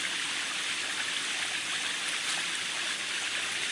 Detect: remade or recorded recorded